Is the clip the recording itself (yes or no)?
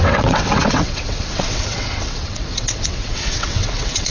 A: no